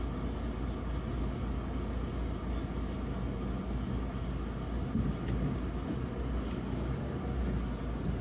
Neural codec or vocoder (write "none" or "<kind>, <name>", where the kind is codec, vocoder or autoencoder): none